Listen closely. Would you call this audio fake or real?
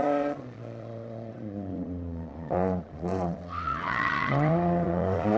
fake